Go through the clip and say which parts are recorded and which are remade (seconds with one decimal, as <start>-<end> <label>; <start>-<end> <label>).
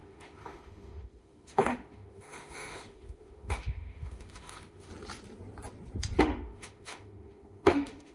0.0-4.9 remade; 4.9-6.2 recorded; 6.2-8.1 remade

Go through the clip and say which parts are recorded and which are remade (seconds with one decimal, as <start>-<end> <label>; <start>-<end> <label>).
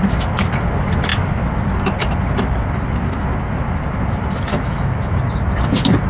0.0-4.5 recorded; 4.5-5.2 remade; 5.2-6.1 recorded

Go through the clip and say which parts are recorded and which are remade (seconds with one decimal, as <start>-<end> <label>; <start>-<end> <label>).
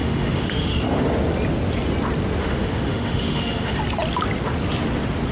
0.0-1.0 remade; 1.0-2.4 recorded; 2.4-3.8 remade; 3.8-5.3 recorded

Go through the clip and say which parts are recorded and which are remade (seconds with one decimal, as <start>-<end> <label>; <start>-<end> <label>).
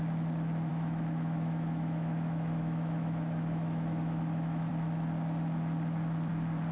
0.0-0.7 recorded; 0.7-4.7 remade; 4.7-6.7 recorded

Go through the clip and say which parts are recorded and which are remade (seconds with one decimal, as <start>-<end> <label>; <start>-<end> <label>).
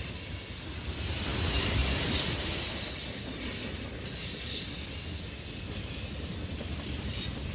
0.0-7.5 recorded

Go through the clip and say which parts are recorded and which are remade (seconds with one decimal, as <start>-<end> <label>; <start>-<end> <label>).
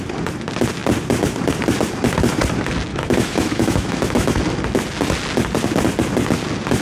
0.0-2.9 recorded; 2.9-4.4 remade; 4.4-6.8 recorded